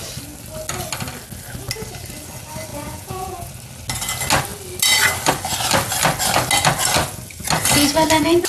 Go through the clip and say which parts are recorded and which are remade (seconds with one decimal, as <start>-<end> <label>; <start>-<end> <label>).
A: 0.0-2.7 recorded; 2.7-3.5 remade; 3.5-8.5 recorded